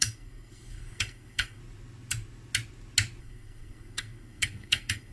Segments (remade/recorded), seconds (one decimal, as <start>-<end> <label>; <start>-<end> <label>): 0.0-1.6 remade; 1.6-3.2 recorded; 3.2-5.1 remade

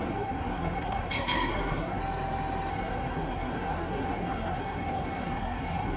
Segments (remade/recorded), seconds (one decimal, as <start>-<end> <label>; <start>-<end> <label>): 0.0-2.0 remade; 2.0-2.7 recorded; 2.7-6.0 remade

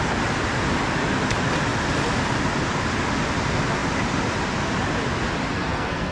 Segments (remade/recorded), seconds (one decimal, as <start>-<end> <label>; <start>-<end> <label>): 0.0-5.5 recorded; 5.5-6.1 remade

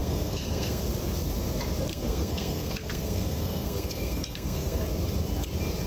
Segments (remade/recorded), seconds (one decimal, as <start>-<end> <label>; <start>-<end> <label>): 0.0-0.8 remade; 0.8-1.9 recorded; 1.9-4.8 remade; 4.8-5.9 recorded

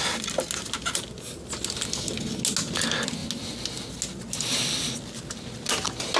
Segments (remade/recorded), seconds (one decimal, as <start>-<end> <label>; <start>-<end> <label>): 0.0-6.2 recorded

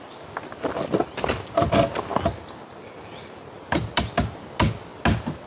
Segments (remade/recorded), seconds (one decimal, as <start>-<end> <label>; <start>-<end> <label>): 0.0-5.5 recorded